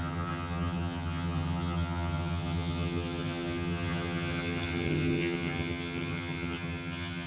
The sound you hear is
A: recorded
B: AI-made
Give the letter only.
B